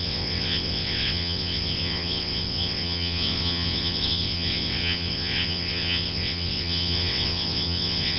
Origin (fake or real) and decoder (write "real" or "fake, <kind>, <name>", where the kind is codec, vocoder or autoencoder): fake, vocoder, WaveNeXt